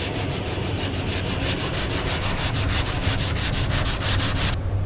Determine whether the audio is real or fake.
real